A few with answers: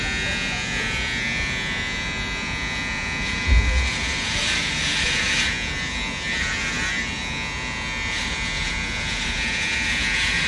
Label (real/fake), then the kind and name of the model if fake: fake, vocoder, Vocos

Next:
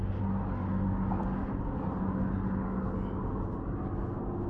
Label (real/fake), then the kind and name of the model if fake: real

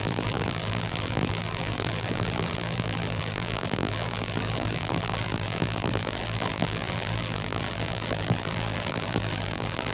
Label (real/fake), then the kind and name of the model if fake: fake, vocoder, BigVGAN v2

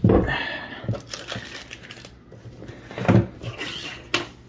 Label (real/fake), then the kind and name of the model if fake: real